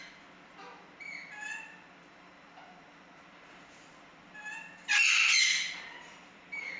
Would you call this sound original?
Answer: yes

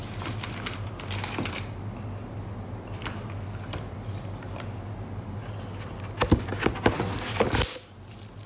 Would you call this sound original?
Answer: yes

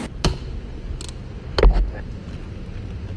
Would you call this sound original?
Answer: yes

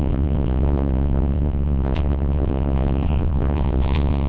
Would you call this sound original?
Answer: no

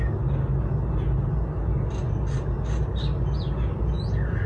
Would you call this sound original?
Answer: yes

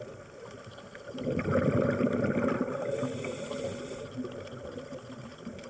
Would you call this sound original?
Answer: yes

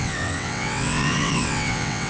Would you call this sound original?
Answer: no